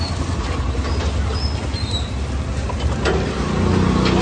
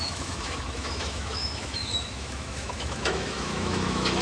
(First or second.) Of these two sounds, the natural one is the first